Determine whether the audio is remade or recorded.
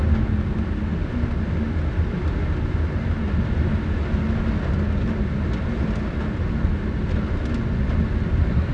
recorded